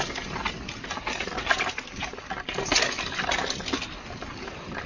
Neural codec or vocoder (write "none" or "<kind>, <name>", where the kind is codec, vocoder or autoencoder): none